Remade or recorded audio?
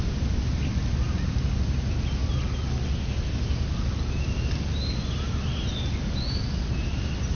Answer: recorded